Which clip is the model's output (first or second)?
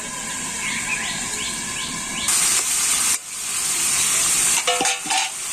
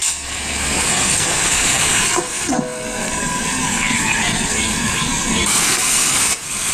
second